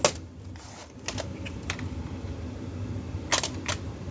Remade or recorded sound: recorded